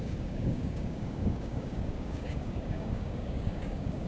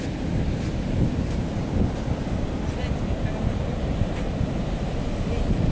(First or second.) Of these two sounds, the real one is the second